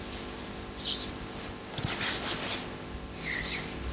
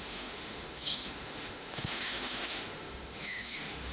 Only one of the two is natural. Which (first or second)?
first